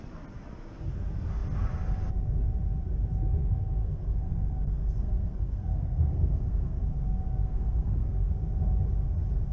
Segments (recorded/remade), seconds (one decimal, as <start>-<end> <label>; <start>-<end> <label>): 0.0-3.8 recorded; 3.8-6.8 remade; 6.8-7.4 recorded; 7.4-8.3 remade; 8.3-9.5 recorded